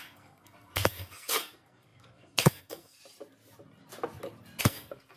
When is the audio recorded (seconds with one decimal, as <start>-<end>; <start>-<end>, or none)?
3.0-4.6